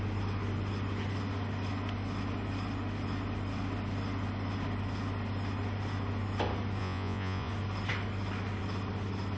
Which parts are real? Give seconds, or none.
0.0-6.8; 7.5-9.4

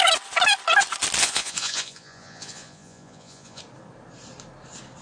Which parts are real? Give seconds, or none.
0.0-1.2; 3.6-5.0

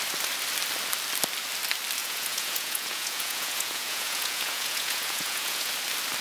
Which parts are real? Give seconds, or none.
0.0-2.0; 5.7-6.2

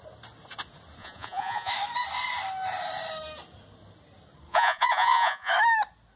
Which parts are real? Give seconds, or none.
0.0-1.0; 1.7-4.5; 5.5-6.2